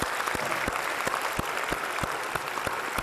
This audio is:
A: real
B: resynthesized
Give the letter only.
A